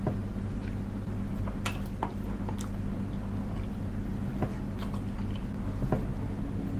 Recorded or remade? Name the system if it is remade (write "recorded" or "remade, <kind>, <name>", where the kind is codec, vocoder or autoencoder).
recorded